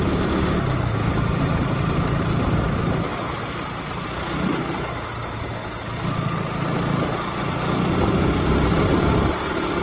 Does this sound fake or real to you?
real